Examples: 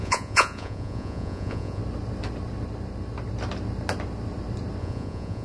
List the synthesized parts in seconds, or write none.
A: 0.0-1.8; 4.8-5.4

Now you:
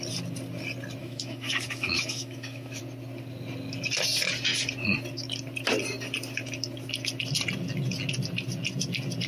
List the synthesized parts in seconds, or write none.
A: 1.0-2.8

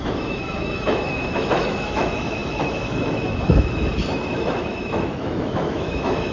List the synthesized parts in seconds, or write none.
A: 0.0-6.3

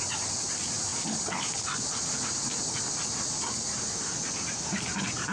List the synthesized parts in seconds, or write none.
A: none

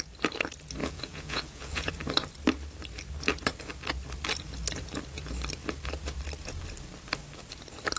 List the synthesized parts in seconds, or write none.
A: 0.8-1.9

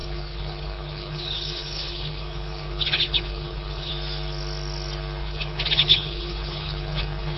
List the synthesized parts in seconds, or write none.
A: 0.0-3.9; 5.2-7.4